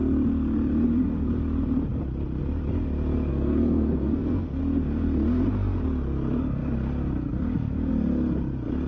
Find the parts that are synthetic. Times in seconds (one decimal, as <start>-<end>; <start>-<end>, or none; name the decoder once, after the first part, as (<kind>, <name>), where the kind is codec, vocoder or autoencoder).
3.3-4.6 (codec, SNAC)